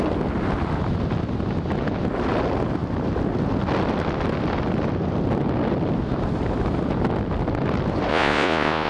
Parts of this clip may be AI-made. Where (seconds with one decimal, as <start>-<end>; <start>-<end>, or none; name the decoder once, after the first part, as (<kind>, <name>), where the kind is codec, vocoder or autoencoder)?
8.1-8.9 (vocoder, Vocos)